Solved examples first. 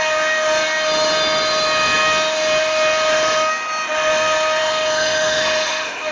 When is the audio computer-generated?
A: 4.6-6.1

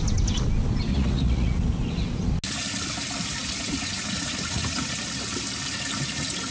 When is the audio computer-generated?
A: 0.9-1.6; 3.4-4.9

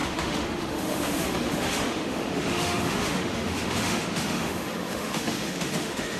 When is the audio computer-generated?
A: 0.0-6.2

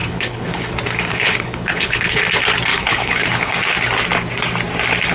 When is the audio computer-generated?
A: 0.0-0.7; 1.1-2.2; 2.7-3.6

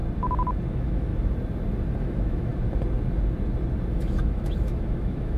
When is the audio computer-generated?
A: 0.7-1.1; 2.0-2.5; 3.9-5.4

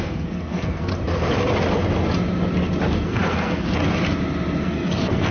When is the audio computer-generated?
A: 0.0-0.9; 2.9-3.8; 4.6-5.3

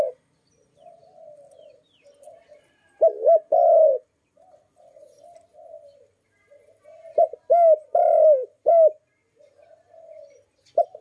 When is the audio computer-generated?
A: none

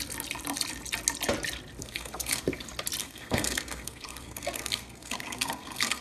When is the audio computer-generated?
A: 1.8-2.4; 3.0-6.0